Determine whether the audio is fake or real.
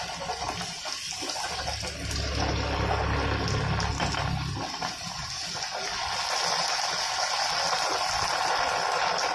real